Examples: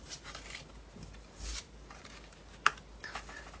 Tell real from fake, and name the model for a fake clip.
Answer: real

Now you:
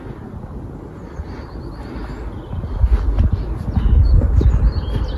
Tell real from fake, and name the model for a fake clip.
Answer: real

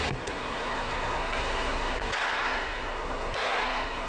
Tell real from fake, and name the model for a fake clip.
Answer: fake, codec, SNAC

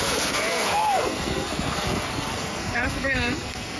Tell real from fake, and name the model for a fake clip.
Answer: fake, codec, SNAC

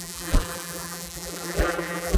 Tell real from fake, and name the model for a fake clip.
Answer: fake, vocoder, BigVGAN v2